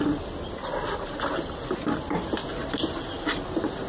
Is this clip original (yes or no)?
yes